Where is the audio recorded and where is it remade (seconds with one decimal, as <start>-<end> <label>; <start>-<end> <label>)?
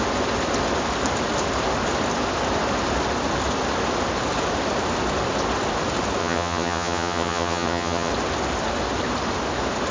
0.0-6.2 recorded; 6.2-8.1 remade; 8.1-9.9 recorded